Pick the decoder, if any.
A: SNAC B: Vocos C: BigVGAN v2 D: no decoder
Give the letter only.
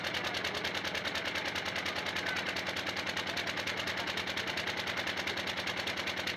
D